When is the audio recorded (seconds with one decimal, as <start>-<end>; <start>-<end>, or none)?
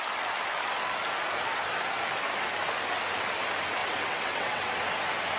0.0-3.8; 4.7-5.4